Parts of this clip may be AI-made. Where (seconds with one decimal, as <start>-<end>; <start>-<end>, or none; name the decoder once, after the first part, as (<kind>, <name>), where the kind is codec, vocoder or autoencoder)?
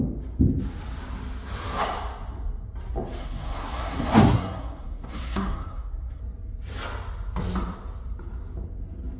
3.2-6.2 (codec, SNAC)